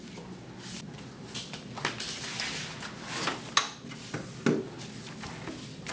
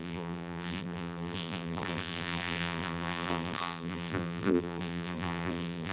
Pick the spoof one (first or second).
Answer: second